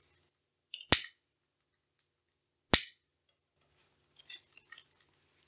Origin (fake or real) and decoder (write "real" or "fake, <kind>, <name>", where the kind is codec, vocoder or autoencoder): real